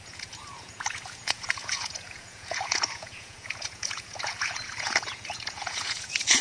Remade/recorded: remade